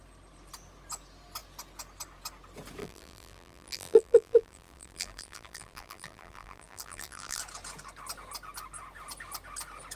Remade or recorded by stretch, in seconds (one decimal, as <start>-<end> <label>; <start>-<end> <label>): 0.0-2.8 recorded; 2.8-7.4 remade; 7.4-10.0 recorded